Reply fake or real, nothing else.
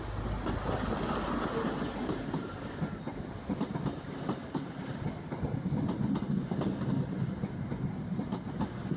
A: real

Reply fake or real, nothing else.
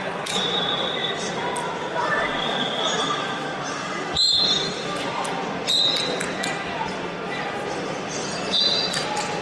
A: fake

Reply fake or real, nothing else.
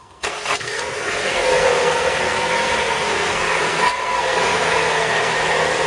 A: fake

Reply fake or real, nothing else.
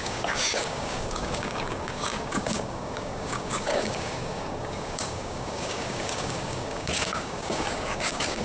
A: fake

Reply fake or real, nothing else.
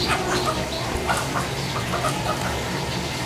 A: real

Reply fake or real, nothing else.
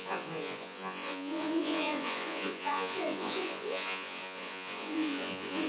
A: fake